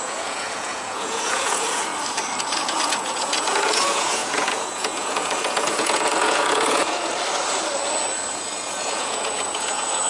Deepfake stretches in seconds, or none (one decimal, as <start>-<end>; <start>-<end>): 0.0-1.9; 2.4-7.1; 8.3-10.1